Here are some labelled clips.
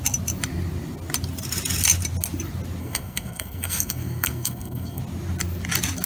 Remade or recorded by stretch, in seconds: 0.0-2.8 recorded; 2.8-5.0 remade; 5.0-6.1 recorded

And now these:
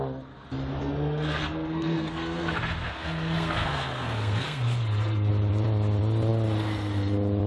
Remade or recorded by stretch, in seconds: 0.0-0.8 recorded; 0.8-5.3 remade; 5.3-7.5 recorded